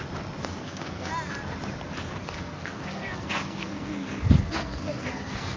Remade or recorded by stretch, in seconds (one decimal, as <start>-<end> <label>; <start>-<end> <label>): 0.0-0.4 recorded; 0.4-1.1 remade; 1.1-2.2 recorded; 2.2-5.6 remade